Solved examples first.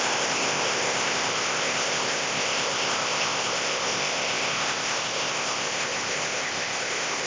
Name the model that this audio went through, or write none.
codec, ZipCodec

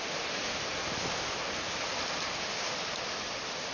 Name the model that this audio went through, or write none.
none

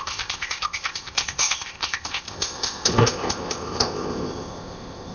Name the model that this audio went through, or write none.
codec, ZipCodec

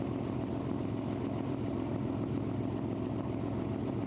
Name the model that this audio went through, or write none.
none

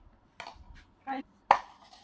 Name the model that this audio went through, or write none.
none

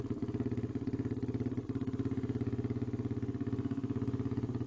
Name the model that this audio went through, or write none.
none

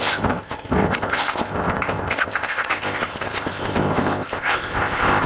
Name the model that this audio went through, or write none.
codec, ZipCodec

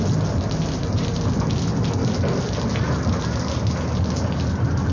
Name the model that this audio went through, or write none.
none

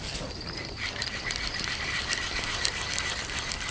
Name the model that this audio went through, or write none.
none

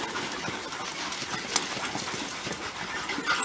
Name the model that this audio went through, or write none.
none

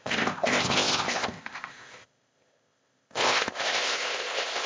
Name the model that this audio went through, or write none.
codec, ZipCodec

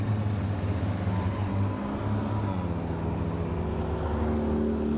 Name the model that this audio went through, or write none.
none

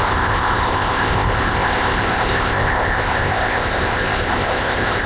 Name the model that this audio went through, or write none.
codec, ZipCodec